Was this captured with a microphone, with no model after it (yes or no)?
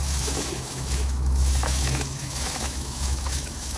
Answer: no